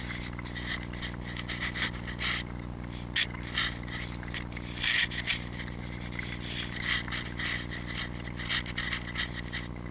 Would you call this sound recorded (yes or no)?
yes